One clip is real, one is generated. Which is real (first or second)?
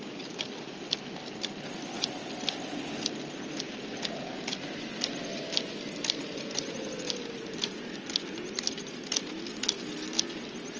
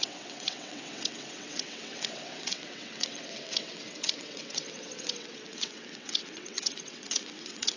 first